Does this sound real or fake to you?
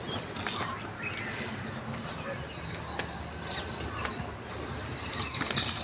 real